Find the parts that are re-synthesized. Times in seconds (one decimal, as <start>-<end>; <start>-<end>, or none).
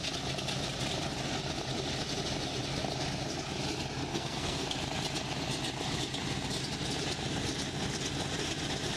4.1-4.8